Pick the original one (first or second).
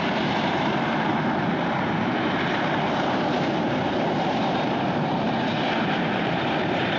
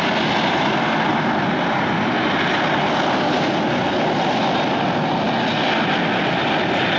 second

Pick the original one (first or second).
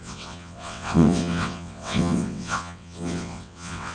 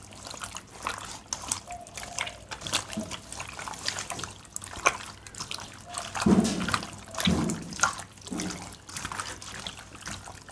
second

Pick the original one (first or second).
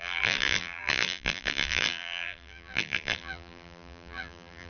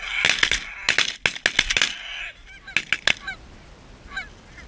second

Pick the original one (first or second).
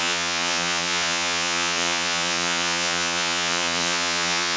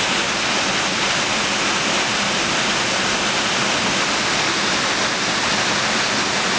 second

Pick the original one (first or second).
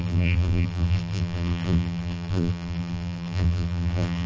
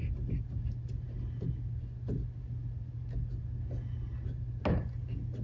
second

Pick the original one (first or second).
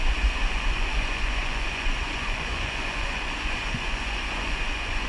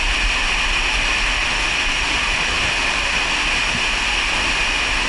second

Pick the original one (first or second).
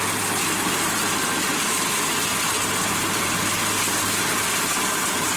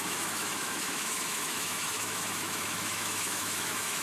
first